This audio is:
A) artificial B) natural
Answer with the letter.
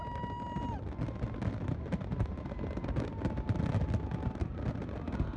B